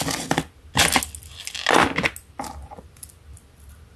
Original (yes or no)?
yes